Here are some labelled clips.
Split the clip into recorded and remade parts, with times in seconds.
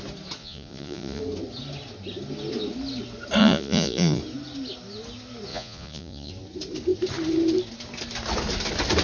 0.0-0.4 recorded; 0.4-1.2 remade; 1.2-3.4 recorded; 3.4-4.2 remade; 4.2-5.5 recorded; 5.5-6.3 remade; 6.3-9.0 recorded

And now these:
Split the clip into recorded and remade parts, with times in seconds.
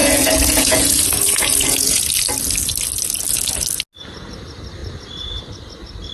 0.0-2.0 remade; 2.0-6.1 recorded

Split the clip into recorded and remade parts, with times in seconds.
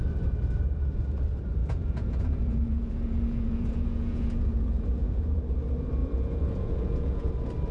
0.0-1.6 recorded; 1.6-5.4 remade; 5.4-6.0 recorded; 6.0-7.3 remade; 7.3-7.7 recorded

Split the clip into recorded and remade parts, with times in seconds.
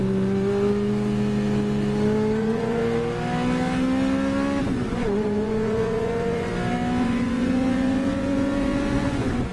0.0-2.4 recorded; 2.4-2.8 remade; 2.8-4.6 recorded; 4.6-6.5 remade; 6.5-7.0 recorded; 7.0-9.5 remade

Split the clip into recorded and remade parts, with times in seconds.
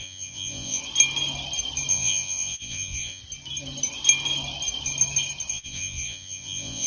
0.0-0.8 remade; 0.8-1.9 recorded; 1.9-3.2 remade; 3.2-5.5 recorded; 5.5-6.9 remade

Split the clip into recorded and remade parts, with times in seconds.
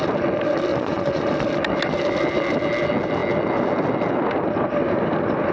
0.0-0.7 recorded; 0.7-1.3 remade; 1.3-5.5 recorded